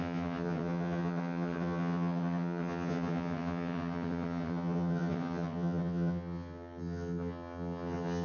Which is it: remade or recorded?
remade